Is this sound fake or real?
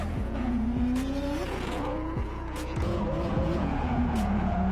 fake